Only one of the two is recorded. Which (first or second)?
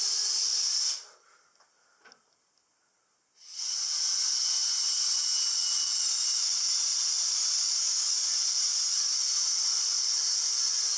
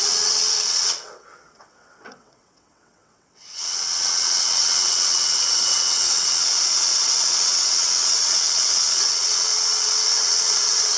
first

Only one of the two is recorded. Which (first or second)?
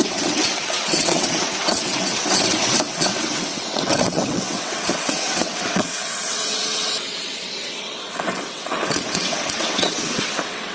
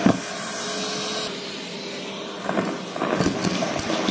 second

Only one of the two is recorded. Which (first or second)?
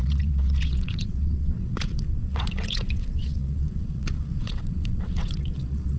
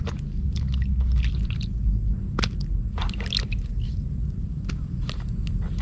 second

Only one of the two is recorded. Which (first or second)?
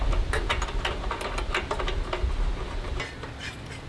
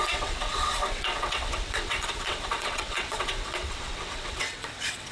first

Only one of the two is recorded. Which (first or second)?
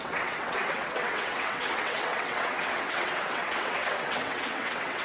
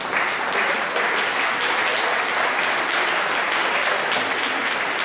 second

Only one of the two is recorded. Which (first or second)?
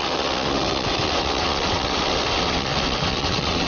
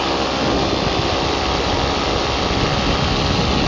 second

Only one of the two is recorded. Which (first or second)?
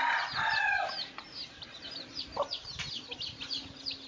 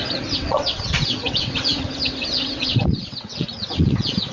first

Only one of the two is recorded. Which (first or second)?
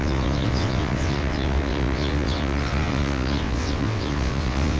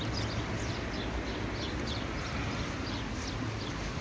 second